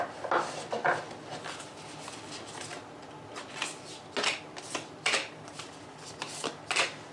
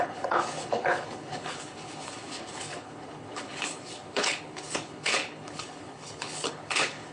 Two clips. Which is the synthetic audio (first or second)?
second